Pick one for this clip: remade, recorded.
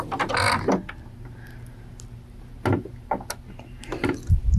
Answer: recorded